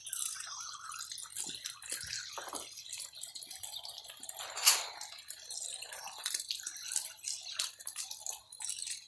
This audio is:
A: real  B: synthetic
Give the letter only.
A